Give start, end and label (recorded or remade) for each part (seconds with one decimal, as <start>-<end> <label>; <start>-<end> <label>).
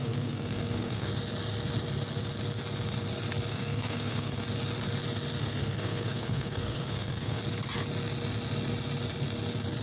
0.0-1.1 remade; 1.1-3.5 recorded; 3.5-4.4 remade; 4.4-5.4 recorded; 5.4-7.4 remade; 7.4-9.8 recorded